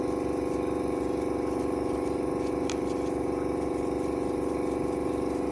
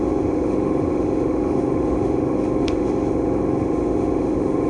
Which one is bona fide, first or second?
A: first